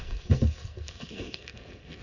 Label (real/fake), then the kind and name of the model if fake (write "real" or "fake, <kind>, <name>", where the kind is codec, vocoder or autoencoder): fake, codec, SNAC